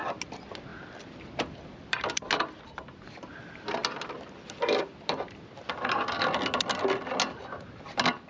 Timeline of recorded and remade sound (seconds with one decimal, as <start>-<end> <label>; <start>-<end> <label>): 0.0-8.3 recorded